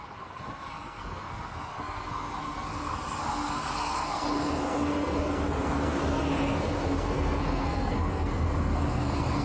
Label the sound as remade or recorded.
remade